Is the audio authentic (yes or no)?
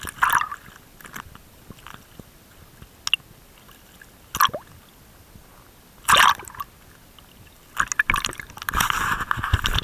yes